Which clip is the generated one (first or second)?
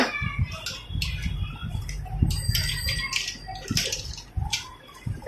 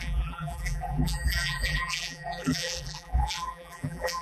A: second